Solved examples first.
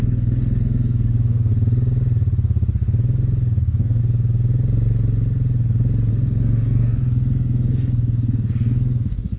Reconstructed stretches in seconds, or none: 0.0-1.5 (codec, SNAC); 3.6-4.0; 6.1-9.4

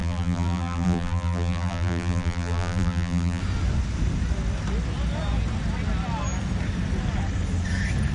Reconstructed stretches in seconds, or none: 0.0-3.4 (vocoder, BigVGAN v2)

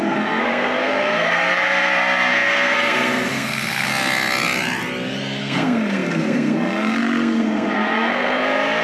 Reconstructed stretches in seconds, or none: 0.0-3.9 (codec, SNAC); 5.4-8.8

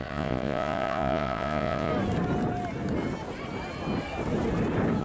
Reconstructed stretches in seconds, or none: 0.0-1.9 (vocoder, Vocos)